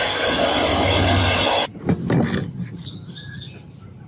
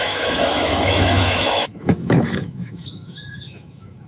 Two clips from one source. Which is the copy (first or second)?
second